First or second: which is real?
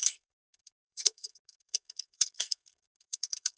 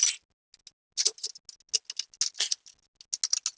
second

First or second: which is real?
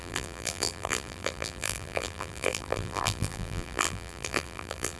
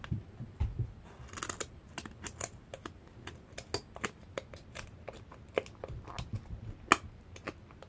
second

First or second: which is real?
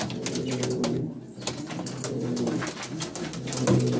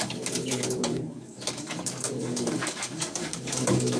first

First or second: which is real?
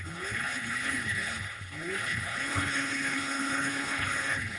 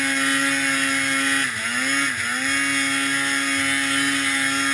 second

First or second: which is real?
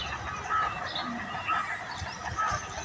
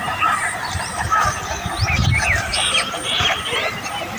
first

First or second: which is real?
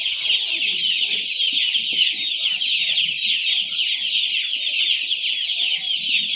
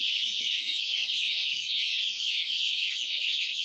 first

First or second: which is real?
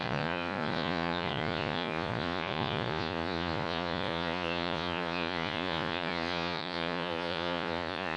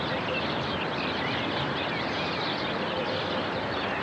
second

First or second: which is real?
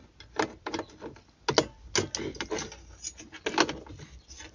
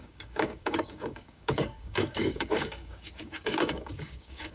first